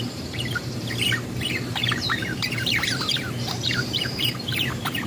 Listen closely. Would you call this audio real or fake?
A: fake